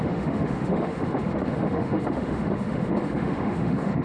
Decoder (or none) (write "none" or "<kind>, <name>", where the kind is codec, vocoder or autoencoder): autoencoder, DAC-VAE